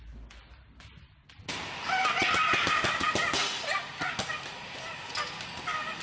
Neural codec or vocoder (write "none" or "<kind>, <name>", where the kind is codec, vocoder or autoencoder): none